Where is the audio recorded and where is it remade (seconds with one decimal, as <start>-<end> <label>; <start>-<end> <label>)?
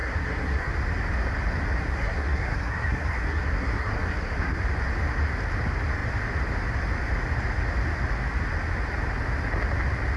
0.0-0.7 remade; 0.7-1.8 recorded; 1.8-4.6 remade; 4.6-10.2 recorded